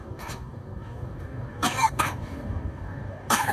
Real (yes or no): no